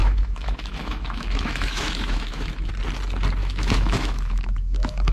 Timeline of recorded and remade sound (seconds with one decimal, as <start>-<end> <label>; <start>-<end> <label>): 0.0-2.7 remade; 2.7-3.4 recorded; 3.4-5.1 remade